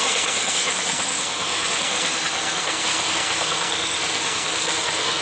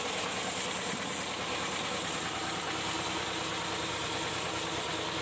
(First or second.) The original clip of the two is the second